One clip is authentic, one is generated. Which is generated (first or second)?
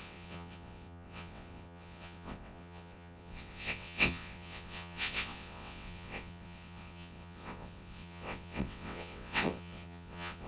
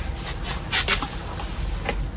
first